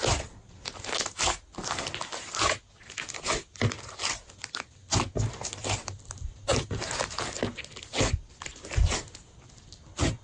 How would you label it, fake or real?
real